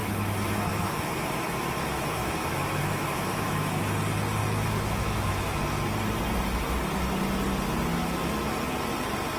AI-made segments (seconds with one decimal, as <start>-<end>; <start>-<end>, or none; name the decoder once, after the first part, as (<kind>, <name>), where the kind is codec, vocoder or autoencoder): 0.0-3.8 (autoencoder, DAC-VAE); 4.4-5.3